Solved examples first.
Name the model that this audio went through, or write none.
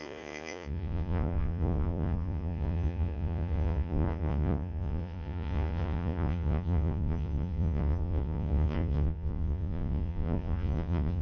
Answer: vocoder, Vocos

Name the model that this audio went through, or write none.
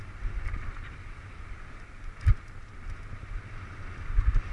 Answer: none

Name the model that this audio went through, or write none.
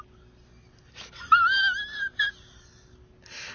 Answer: none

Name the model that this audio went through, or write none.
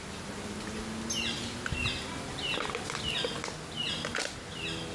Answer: none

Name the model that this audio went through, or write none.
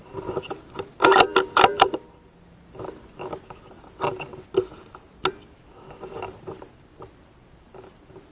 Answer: none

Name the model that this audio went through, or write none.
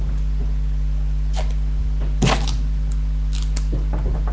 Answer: none